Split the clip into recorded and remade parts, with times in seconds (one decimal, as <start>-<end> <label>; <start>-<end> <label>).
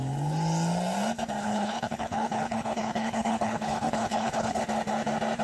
0.0-1.4 recorded; 1.4-4.6 remade; 4.6-5.4 recorded